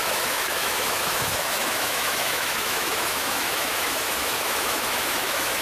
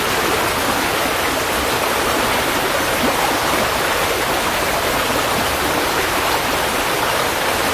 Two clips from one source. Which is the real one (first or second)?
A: second